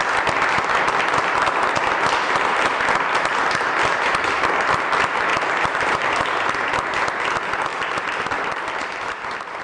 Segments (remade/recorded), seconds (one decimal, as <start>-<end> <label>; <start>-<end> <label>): 0.0-5.3 recorded; 5.3-6.0 remade; 6.0-7.7 recorded; 7.7-8.3 remade; 8.3-9.6 recorded